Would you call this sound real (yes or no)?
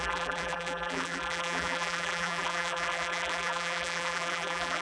no